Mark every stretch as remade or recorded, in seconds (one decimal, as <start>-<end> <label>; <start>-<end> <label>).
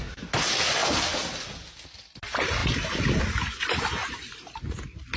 0.0-4.0 recorded; 4.0-4.7 remade; 4.7-5.2 recorded